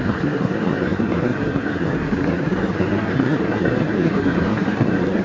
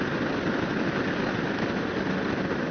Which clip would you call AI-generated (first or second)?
first